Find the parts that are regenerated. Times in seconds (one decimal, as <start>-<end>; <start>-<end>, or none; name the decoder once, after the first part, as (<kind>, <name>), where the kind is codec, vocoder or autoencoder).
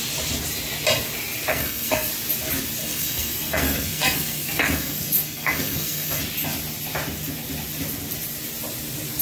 1.5-2.1 (codec, SNAC); 2.8-6.2